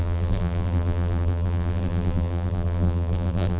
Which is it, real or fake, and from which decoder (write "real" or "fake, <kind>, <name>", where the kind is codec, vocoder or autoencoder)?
fake, vocoder, BigVGAN v2